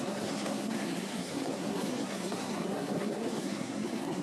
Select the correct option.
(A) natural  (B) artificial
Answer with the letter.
B